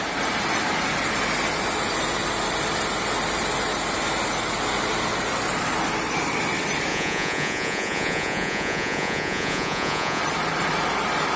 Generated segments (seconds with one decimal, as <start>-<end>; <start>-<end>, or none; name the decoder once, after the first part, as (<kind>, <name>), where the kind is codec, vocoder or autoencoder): 6.9-10.2 (vocoder, Vocos)

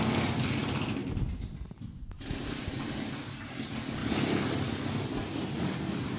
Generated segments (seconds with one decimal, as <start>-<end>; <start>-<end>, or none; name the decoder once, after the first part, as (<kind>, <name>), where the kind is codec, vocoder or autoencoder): 1.0-3.1 (vocoder, BigVGAN v2)

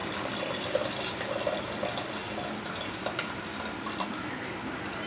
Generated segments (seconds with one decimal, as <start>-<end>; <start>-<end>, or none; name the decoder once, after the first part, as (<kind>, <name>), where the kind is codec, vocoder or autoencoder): none

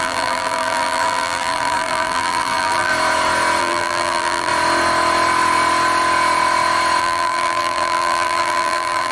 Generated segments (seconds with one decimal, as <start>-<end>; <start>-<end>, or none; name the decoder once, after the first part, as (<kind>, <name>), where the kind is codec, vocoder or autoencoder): 0.0-2.9 (vocoder, BigVGAN v2); 3.6-4.5; 7.0-9.1

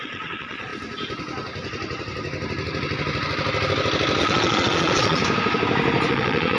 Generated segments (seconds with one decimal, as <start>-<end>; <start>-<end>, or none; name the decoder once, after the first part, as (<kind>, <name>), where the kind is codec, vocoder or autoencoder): 0.0-0.7 (vocoder, Vocos); 4.2-5.2; 6.1-6.6